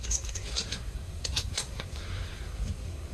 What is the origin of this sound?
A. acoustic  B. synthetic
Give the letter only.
B